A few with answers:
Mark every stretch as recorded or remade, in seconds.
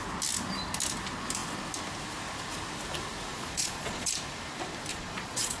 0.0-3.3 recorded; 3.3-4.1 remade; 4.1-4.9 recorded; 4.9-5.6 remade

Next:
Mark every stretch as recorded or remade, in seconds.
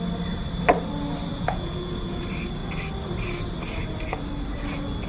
0.0-1.3 recorded; 1.3-2.2 remade; 2.2-5.1 recorded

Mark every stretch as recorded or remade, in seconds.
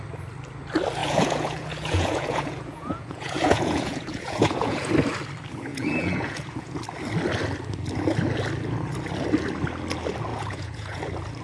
0.0-1.0 recorded; 1.0-4.9 remade; 4.9-5.7 recorded; 5.7-6.8 remade; 6.8-10.3 recorded; 10.3-11.0 remade; 11.0-11.4 recorded